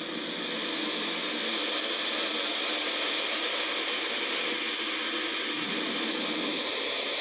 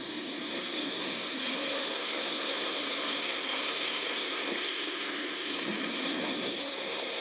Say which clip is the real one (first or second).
first